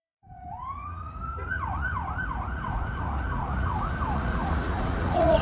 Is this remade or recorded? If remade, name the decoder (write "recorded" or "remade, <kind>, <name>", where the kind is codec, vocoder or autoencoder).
remade, vocoder, Vocos